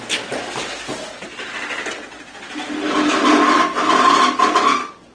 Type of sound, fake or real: real